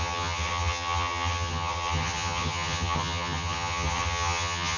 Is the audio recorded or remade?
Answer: remade